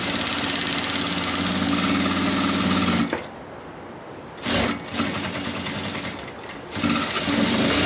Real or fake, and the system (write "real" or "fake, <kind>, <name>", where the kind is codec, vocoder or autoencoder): real